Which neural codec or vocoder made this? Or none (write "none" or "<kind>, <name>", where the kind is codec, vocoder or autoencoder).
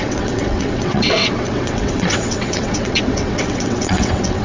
vocoder, WaveNeXt